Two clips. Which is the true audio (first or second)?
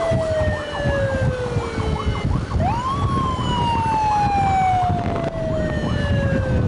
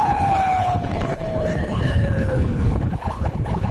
first